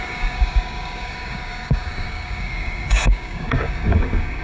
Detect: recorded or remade remade